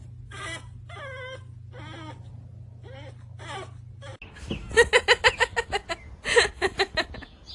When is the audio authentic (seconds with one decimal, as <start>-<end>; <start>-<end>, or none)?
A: 0.0-7.5